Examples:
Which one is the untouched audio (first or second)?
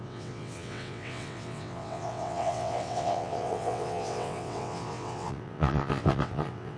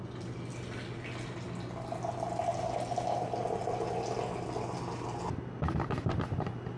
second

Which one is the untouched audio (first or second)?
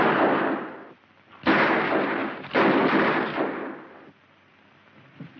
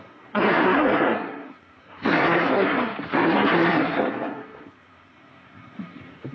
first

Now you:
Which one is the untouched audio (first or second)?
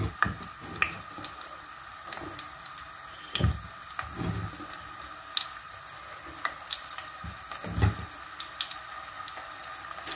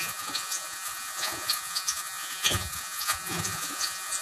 first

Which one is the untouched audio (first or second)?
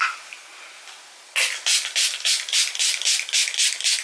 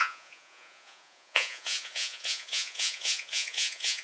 first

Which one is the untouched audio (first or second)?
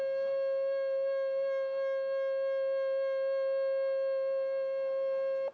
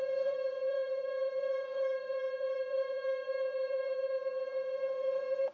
first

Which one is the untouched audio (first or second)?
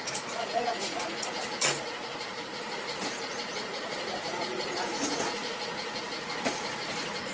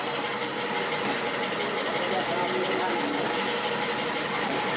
second